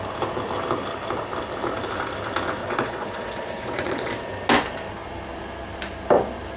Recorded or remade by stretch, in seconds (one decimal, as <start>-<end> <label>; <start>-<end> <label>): 0.0-2.6 recorded; 2.6-4.1 remade; 4.1-6.6 recorded